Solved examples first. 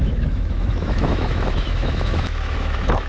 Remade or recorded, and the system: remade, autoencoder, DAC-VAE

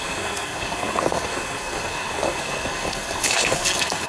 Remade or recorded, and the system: remade, codec, SNAC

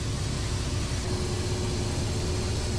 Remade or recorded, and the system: recorded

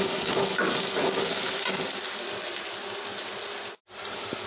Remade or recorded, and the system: recorded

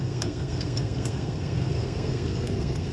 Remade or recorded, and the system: remade, codec, SNAC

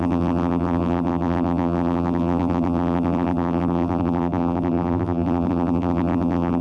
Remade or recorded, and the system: remade, vocoder, BigVGAN v2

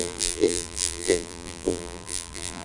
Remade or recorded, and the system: remade, vocoder, BigVGAN v2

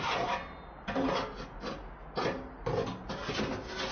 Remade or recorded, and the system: recorded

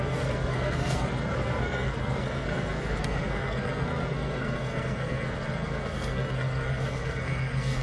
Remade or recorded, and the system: remade, codec, SNAC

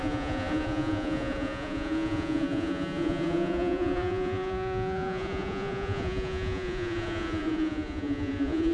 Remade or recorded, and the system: remade, vocoder, Vocos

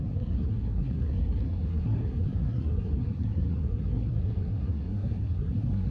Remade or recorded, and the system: remade, codec, SNAC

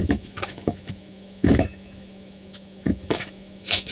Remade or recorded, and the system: remade, autoencoder, DAC-VAE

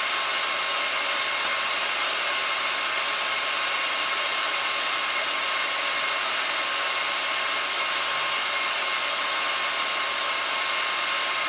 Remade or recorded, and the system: recorded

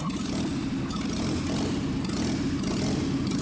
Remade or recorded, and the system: recorded